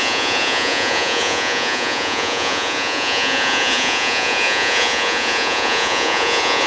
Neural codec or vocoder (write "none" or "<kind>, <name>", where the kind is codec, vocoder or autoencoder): vocoder, Vocos